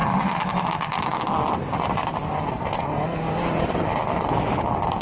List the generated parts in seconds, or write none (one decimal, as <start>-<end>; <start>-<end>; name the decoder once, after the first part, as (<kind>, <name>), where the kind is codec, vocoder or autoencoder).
none